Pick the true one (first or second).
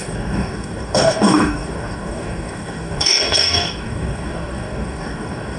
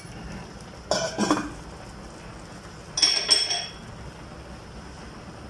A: second